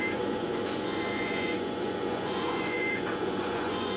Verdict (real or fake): fake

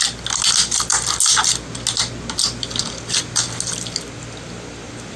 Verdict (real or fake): real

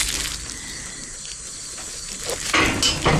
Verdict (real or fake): real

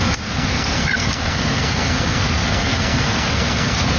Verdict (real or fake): fake